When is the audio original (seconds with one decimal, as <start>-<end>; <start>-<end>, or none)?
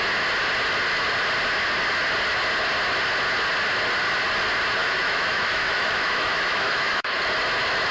0.0-4.8; 7.2-7.9